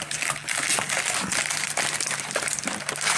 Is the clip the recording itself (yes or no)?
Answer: no